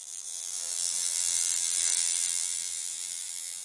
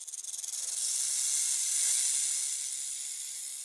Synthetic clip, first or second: first